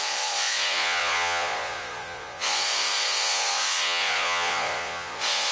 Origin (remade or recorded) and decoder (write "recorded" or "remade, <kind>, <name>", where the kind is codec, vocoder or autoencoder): remade, vocoder, Vocos